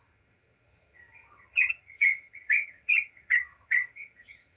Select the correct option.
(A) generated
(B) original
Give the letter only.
A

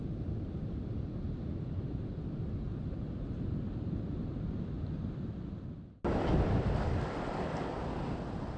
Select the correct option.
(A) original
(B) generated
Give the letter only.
A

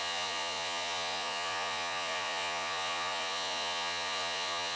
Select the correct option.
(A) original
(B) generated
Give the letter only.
B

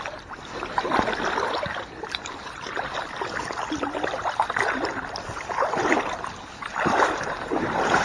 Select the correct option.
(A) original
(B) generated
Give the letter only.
B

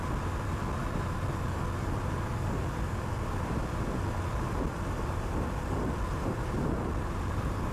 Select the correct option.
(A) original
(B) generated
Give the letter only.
A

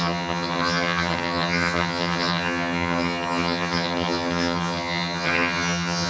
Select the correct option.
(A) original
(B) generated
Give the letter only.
B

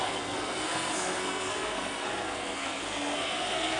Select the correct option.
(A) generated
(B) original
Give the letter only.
A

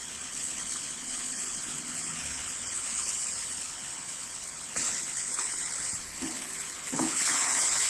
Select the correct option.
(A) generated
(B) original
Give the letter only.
A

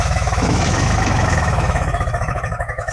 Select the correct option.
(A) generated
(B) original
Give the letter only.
A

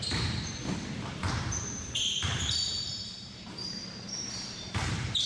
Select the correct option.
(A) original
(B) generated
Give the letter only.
B